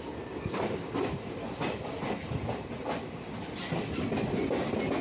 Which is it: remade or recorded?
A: recorded